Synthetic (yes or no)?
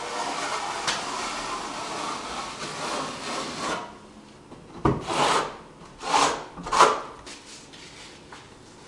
no